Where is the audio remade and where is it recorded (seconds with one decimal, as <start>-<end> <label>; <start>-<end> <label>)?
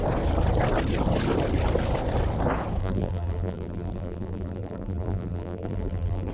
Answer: 0.0-2.8 recorded; 2.8-6.3 remade